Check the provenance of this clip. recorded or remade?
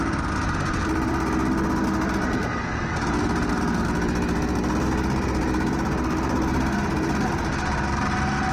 recorded